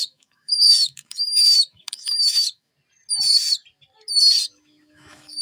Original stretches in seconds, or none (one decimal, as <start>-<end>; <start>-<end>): 2.7-4.4